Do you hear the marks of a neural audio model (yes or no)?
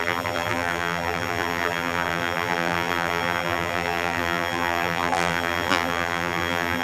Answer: yes